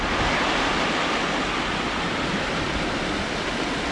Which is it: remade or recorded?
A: recorded